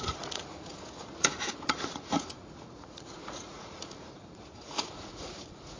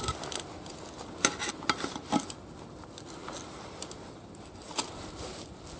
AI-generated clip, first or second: first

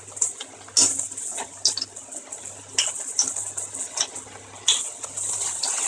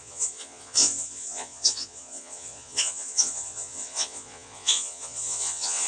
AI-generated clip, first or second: second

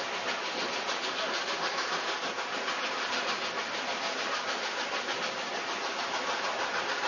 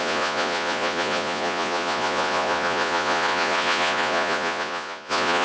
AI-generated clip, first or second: second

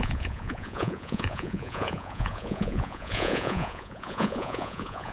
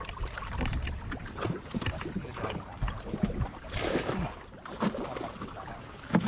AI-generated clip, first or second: first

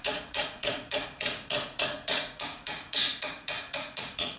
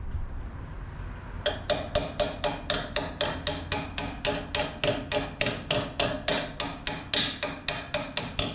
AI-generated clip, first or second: first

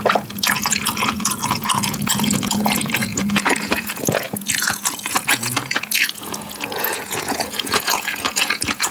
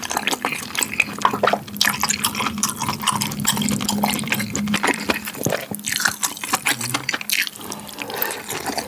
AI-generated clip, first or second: first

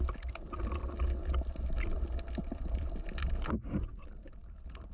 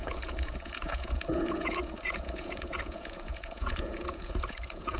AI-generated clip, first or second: second